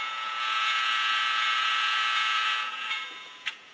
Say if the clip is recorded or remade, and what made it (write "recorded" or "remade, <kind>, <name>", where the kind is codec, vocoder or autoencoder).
remade, vocoder, Vocos